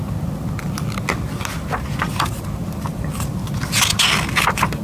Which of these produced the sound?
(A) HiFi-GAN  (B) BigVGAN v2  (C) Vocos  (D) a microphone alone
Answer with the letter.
D